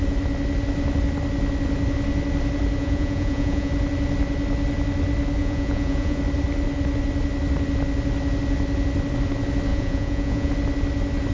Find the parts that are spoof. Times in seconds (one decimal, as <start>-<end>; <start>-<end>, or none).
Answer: 2.8-3.7; 5.4-6.2; 9.7-10.5